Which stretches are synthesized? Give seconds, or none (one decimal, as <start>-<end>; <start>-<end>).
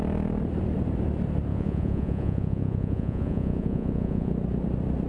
1.5-4.3